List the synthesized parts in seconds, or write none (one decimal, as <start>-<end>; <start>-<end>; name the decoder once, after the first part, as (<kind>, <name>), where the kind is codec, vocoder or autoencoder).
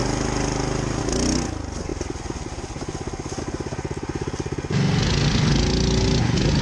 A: 0.0-1.0 (vocoder, BigVGAN v2)